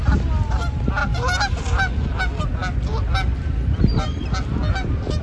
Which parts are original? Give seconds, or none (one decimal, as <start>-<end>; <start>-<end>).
0.0-5.2